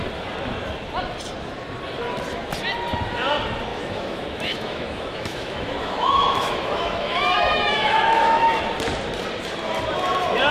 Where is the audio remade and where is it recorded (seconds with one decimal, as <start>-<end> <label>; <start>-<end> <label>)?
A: 0.0-3.7 recorded; 3.7-8.6 remade; 8.6-10.5 recorded